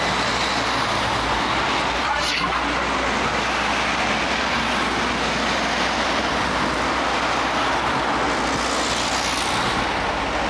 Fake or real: real